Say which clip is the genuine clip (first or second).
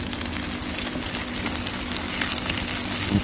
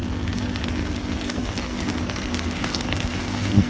first